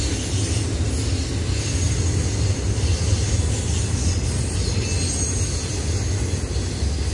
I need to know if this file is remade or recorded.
recorded